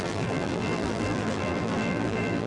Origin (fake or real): fake